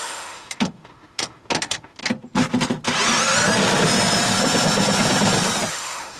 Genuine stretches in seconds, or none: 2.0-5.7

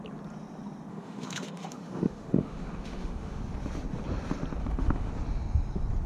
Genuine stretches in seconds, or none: 0.0-0.9; 3.4-4.6; 5.1-6.1

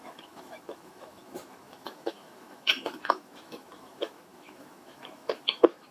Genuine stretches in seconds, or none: none

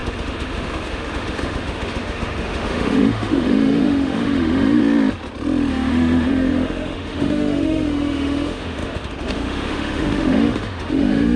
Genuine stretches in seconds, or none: 4.8-5.7

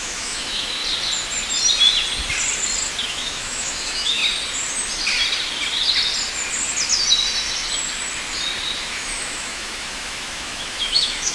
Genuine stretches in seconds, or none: 0.8-3.0; 4.2-8.8

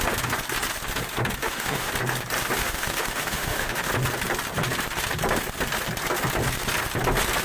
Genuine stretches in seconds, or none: 0.0-1.4; 1.9-2.6; 3.9-7.4

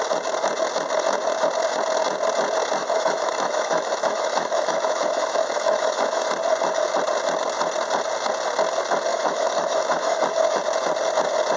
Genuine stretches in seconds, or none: 0.0-2.8; 6.3-9.1; 10.6-11.6